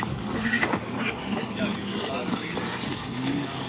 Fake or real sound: fake